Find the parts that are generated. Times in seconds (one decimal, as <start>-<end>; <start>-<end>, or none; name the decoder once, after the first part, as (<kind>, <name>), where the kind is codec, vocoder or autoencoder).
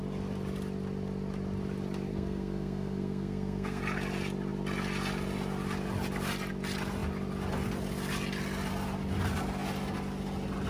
2.1-3.8 (codec, SNAC)